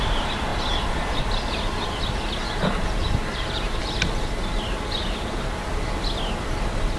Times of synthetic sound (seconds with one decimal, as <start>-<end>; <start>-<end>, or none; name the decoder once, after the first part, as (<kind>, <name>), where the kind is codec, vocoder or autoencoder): 0.5-1.0 (vocoder, BigVGAN v2); 2.5-3.8